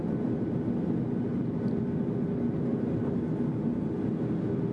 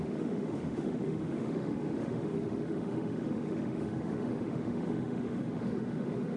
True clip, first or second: first